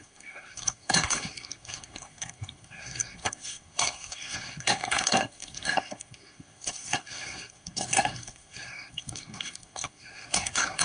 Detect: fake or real fake